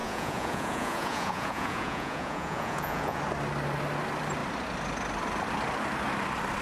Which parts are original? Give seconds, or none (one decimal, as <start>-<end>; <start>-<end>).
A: 3.2-6.6